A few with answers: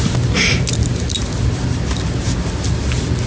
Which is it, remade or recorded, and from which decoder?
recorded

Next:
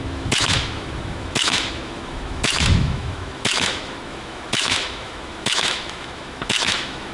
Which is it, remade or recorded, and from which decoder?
remade, autoencoder, DAC-VAE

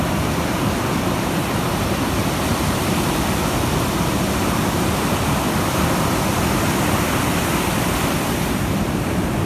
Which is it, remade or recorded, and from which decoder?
recorded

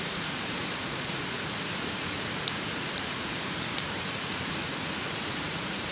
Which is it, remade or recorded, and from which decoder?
remade, vocoder, Vocos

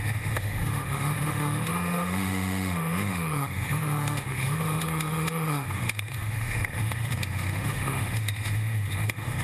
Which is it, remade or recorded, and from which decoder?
remade, autoencoder, DAC-VAE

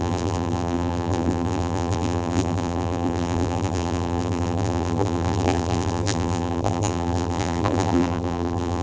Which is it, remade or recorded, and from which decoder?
remade, vocoder, BigVGAN v2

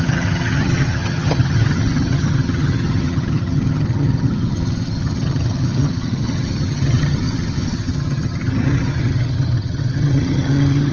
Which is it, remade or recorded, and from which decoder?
remade, vocoder, HiFi-GAN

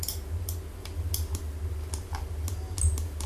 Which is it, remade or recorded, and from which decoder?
recorded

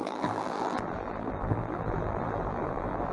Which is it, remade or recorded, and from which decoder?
remade, vocoder, BigVGAN v2